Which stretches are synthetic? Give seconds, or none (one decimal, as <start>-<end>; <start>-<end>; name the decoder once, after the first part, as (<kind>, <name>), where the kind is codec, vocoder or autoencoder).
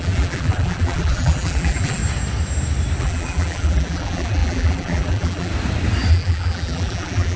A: 0.0-2.0 (vocoder, BigVGAN v2); 3.0-5.5; 6.1-7.4